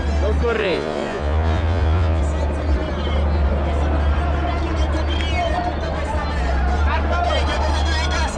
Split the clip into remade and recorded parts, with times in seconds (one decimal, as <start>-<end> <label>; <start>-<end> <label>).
0.0-0.6 recorded; 0.6-2.2 remade; 2.2-8.4 recorded